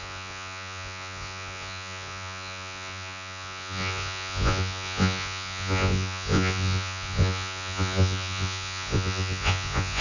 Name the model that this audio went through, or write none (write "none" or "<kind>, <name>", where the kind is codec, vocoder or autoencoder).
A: vocoder, Vocos